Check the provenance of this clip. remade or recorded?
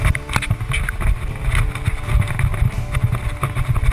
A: recorded